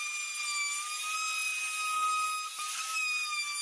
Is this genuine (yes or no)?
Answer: yes